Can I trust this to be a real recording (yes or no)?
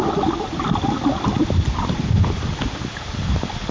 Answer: yes